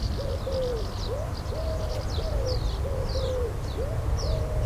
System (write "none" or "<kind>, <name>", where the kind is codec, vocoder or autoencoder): none